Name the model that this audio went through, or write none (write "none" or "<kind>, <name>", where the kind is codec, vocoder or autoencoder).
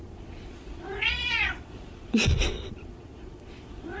vocoder, Vocos